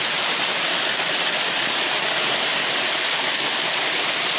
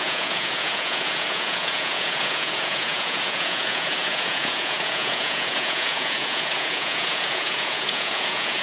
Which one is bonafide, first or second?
first